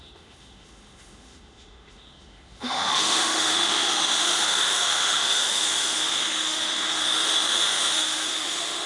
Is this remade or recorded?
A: remade